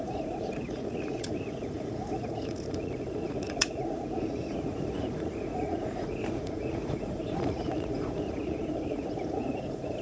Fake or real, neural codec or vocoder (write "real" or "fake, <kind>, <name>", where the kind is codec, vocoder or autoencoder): fake, vocoder, Vocos